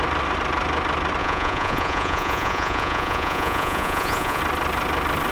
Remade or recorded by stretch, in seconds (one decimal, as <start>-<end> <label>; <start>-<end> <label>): 0.0-1.2 recorded; 1.2-4.4 remade; 4.4-5.3 recorded